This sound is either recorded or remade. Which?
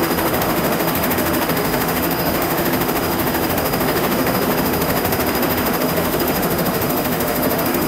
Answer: remade